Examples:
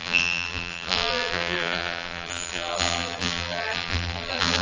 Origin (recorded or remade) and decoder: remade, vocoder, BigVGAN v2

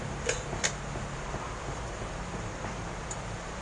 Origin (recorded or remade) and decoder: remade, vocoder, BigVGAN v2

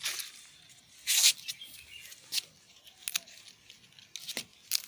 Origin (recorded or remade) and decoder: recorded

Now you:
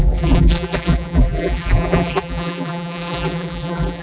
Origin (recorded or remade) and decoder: remade, vocoder, BigVGAN v2